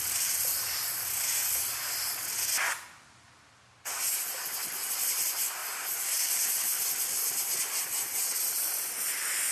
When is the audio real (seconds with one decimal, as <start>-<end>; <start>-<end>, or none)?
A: 0.0-9.5